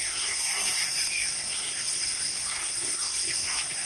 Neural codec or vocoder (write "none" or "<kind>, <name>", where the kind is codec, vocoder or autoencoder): codec, SNAC